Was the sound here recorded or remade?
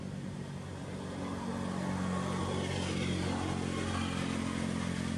recorded